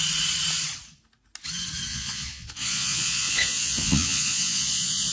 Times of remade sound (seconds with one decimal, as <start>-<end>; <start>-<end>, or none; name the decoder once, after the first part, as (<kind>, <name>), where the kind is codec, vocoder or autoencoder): 1.9-5.1 (vocoder, Vocos)